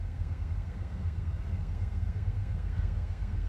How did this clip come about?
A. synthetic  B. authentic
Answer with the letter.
A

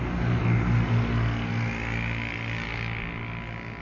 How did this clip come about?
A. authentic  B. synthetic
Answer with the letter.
A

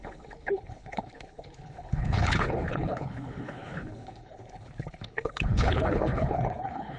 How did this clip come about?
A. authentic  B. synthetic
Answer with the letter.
B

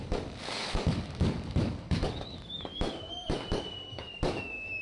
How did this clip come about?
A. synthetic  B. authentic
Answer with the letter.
A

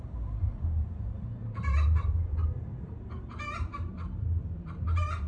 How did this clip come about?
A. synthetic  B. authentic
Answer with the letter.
A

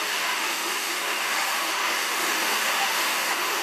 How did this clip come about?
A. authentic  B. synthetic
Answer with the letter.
B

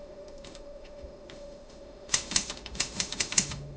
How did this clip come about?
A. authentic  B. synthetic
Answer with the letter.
B